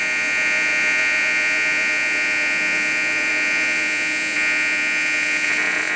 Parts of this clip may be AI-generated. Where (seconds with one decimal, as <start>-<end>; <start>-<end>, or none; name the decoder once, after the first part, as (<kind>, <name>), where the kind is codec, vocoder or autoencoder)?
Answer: 0.0-6.0 (vocoder, Vocos)